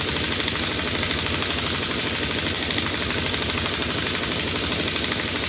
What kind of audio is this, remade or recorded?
recorded